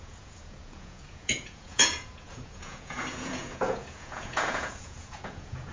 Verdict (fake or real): fake